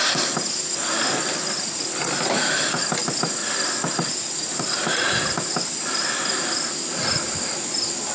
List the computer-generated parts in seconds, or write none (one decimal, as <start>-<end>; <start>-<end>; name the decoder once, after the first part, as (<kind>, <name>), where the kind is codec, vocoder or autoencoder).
none